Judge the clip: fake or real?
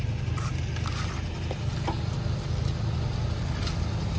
real